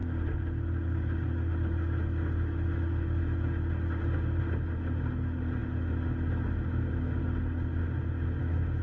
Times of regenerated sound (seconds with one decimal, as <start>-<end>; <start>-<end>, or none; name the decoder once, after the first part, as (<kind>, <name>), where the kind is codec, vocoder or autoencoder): none